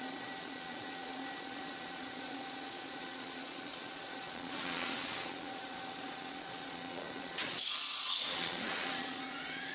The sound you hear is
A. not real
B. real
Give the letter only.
A